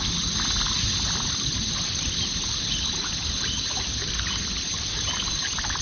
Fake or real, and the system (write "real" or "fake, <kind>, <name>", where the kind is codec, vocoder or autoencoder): real